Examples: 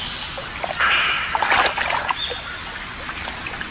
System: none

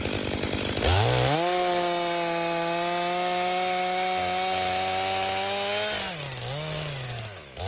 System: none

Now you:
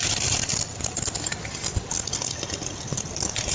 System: none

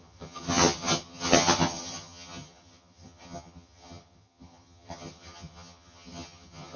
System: vocoder, HiFi-GAN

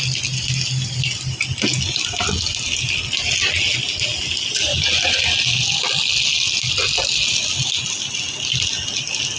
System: none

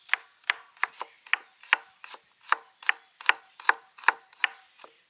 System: none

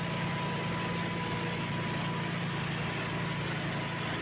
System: none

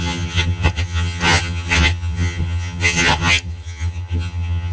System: vocoder, HiFi-GAN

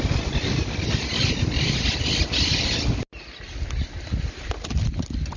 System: none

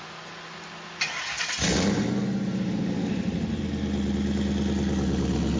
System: none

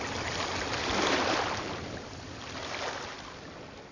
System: none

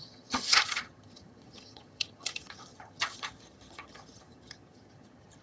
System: vocoder, HiFi-GAN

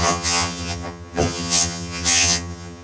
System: vocoder, HiFi-GAN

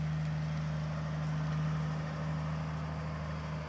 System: none